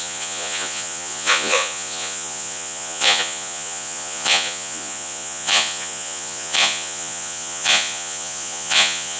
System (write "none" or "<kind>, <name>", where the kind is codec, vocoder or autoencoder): vocoder, Vocos